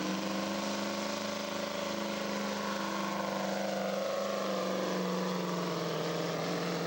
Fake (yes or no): no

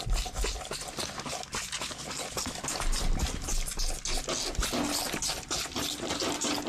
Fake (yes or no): no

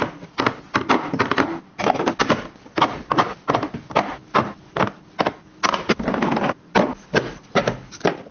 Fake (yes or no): no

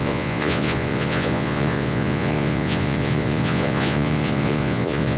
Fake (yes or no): yes